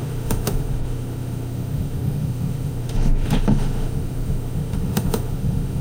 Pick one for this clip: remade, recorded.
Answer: remade